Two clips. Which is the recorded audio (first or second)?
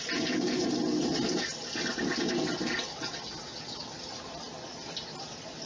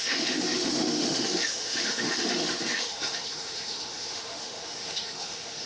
first